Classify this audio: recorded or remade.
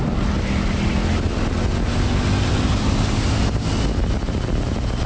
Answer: recorded